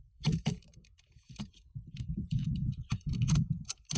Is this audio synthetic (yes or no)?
yes